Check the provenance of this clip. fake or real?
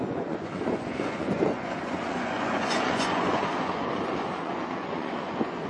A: fake